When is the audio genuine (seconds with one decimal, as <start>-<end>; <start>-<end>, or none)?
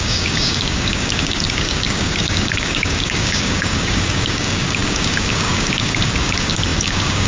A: none